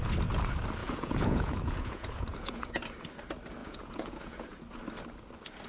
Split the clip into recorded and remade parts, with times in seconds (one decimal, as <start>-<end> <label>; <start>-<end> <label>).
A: 0.0-0.8 recorded; 0.8-2.7 remade; 2.7-3.6 recorded; 3.6-4.8 remade; 4.8-5.7 recorded

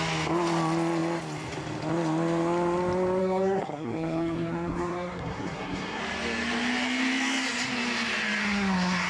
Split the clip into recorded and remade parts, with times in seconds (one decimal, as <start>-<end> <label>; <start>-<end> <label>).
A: 0.0-3.2 recorded; 3.2-6.0 remade; 6.0-8.4 recorded; 8.4-9.1 remade

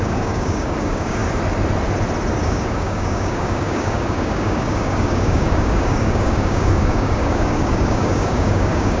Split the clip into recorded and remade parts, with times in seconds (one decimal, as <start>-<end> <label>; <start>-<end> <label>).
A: 0.0-1.2 remade; 1.2-2.3 recorded; 2.3-9.0 remade

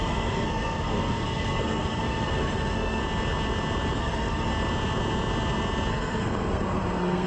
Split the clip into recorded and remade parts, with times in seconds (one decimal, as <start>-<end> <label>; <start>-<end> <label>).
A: 0.0-3.0 remade; 3.0-4.0 recorded; 4.0-4.5 remade; 4.5-5.9 recorded; 5.9-7.3 remade